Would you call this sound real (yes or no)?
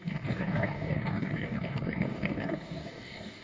no